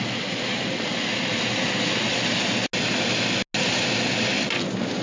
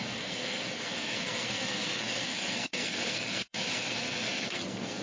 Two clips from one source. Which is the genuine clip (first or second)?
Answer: first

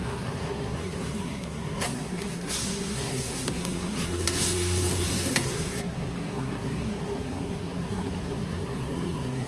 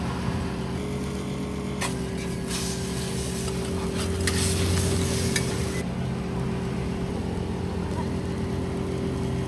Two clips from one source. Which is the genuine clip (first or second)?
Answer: second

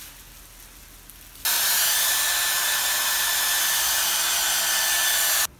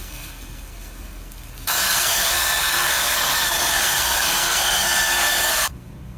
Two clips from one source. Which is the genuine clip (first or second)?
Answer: first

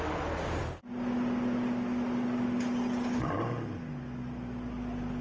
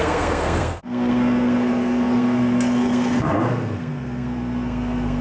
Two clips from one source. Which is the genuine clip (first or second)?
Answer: first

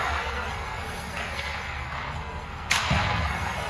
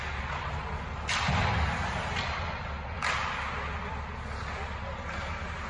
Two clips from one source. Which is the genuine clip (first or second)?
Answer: second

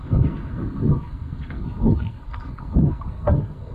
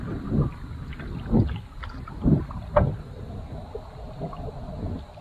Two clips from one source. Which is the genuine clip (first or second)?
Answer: second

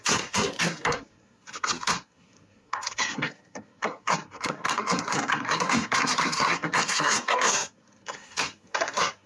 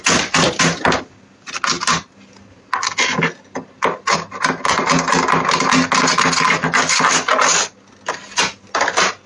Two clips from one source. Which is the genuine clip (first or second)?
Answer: second